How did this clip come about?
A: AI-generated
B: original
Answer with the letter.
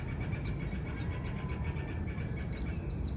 B